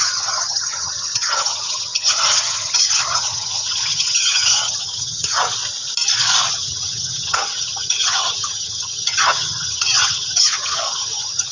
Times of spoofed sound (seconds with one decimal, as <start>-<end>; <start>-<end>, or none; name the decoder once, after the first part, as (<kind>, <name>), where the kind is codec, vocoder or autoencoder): 0.0-5.6 (vocoder, HiFi-GAN); 6.5-11.5